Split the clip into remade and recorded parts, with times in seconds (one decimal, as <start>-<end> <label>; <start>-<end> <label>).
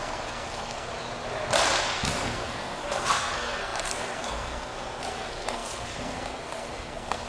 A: 0.0-0.9 remade; 0.9-1.8 recorded; 1.8-7.3 remade